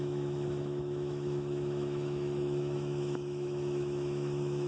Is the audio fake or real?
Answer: fake